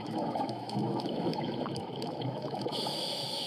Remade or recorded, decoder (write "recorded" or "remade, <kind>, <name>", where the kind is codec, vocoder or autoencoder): remade, autoencoder, DAC-VAE